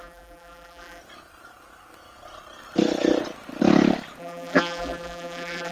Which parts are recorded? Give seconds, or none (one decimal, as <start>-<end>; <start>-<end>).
1.0-4.2

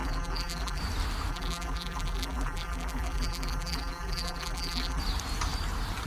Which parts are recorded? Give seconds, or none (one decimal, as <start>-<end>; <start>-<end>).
0.8-1.3; 5.0-6.1

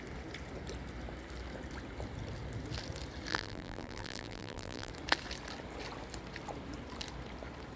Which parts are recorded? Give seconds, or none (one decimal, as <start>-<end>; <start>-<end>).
0.0-3.3; 4.9-7.8

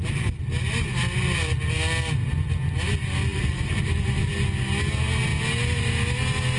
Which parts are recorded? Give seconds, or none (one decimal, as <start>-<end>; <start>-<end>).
0.0-3.3; 4.3-6.6

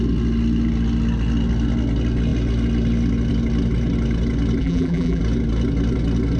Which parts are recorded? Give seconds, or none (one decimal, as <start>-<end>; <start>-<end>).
0.0-4.6; 5.2-6.4

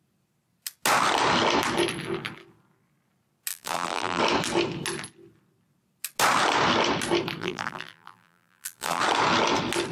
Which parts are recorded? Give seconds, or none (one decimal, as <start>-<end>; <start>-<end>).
0.0-3.5; 4.2-7.4; 9.0-9.9

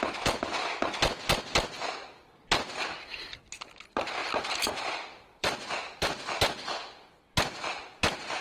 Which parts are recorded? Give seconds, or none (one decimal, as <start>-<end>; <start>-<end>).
0.0-4.2; 6.4-8.4